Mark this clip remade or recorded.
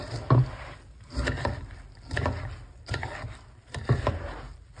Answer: recorded